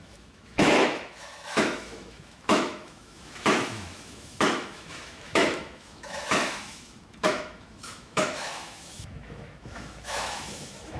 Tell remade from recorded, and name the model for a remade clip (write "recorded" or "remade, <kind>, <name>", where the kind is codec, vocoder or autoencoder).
remade, autoencoder, DAC-VAE